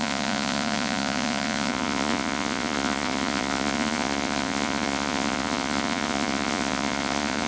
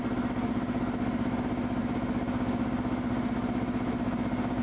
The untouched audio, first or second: second